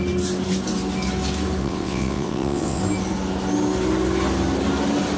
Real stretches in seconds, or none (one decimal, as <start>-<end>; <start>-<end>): 0.0-1.6; 2.8-5.2